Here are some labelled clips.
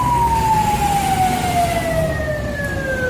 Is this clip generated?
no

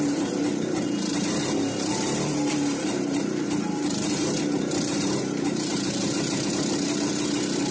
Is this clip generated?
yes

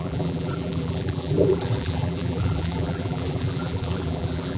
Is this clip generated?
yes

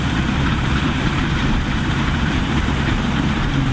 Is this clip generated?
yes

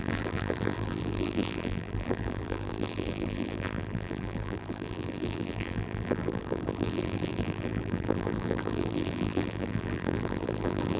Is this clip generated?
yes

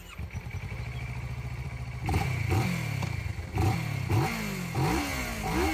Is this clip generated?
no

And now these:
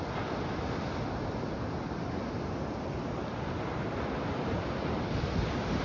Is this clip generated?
no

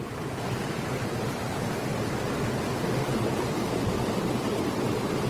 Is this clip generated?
yes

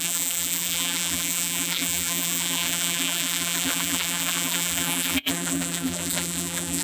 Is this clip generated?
yes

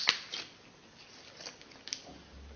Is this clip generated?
no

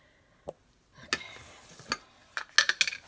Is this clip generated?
no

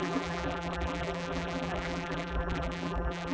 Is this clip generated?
yes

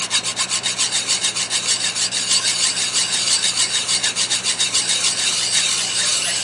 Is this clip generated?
yes